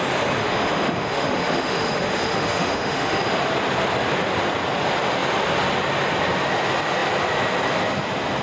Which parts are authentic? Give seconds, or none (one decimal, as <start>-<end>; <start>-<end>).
0.0-0.4; 3.2-8.4